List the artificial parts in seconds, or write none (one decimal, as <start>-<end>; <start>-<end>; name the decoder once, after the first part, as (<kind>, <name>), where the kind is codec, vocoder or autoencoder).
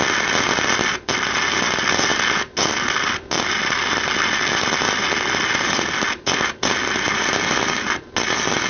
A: none